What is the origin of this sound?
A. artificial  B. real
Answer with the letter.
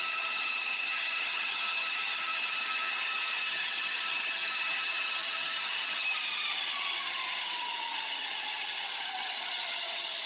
A